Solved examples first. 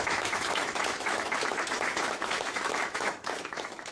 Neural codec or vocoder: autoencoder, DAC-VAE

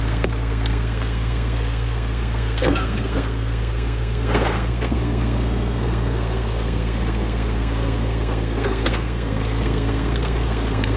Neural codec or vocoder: codec, SNAC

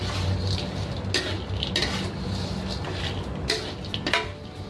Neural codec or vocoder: none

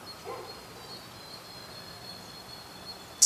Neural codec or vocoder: none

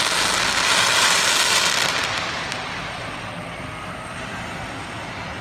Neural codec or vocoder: none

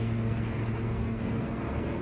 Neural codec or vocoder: codec, SNAC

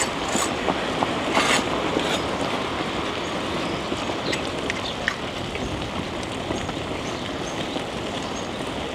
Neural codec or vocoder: none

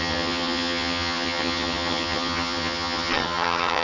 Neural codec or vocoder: vocoder, HiFi-GAN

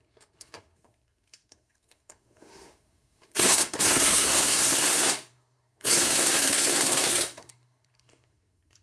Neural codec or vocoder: codec, SNAC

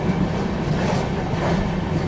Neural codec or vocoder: none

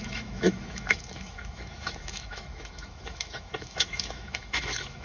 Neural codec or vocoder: autoencoder, DAC-VAE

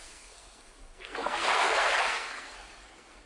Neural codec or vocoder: codec, SNAC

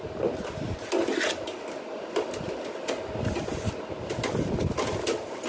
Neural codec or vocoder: none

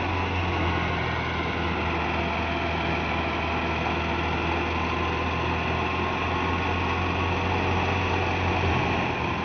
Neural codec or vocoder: none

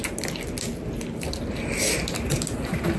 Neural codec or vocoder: none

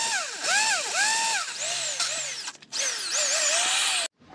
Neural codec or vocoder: none